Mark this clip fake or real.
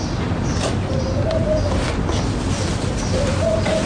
real